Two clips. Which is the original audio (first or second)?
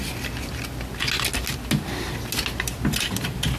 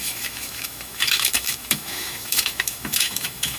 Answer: first